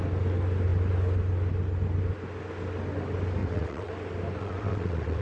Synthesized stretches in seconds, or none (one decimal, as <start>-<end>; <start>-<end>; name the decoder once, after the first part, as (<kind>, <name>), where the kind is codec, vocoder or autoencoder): 3.4-3.9 (vocoder, WaveNeXt); 4.4-5.2